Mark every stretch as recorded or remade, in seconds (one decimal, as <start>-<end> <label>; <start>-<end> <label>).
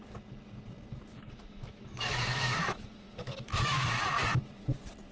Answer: 0.0-1.1 recorded; 1.1-3.9 remade; 3.9-5.1 recorded